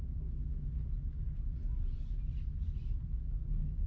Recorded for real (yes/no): yes